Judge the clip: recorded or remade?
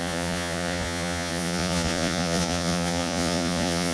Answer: remade